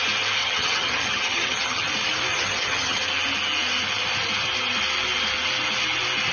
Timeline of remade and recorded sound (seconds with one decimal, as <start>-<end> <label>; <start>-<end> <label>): 0.0-0.4 recorded; 0.4-1.9 remade; 1.9-2.3 recorded; 2.3-3.0 remade; 3.0-6.3 recorded